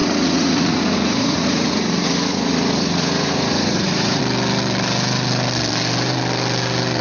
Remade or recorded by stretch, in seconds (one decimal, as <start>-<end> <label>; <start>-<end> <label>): 0.0-4.2 remade; 4.2-7.0 recorded